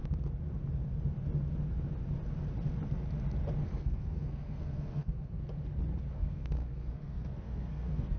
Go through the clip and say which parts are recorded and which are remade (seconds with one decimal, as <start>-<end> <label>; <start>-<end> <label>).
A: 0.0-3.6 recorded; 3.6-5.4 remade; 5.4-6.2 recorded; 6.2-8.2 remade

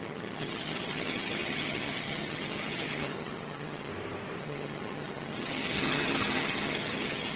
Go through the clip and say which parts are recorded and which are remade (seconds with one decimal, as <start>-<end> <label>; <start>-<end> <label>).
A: 0.0-3.9 remade; 3.9-4.4 recorded; 4.4-7.4 remade

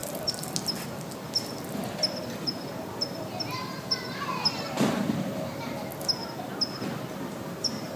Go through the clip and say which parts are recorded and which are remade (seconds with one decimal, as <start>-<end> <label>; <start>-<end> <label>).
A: 0.0-4.2 recorded; 4.2-5.9 remade; 5.9-7.2 recorded; 7.2-8.0 remade

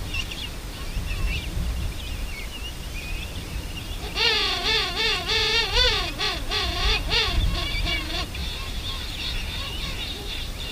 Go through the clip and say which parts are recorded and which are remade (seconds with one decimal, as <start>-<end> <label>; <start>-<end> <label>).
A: 0.0-8.4 recorded; 8.4-10.7 remade

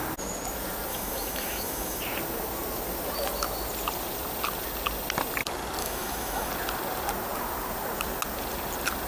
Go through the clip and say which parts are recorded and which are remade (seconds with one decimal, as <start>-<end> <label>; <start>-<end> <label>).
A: 0.0-0.9 recorded; 0.9-2.0 remade; 2.0-5.8 recorded; 5.8-6.5 remade; 6.5-9.1 recorded

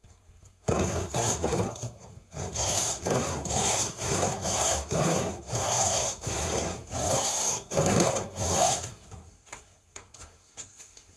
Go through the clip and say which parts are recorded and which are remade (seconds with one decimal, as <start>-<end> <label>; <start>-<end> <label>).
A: 0.0-11.2 remade